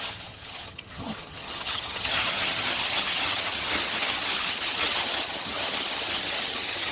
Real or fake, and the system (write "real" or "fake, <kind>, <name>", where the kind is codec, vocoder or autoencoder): fake, vocoder, HiFi-GAN